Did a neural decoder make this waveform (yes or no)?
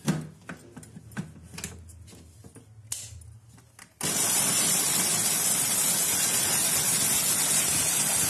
no